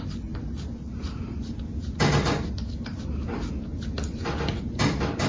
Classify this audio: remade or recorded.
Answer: recorded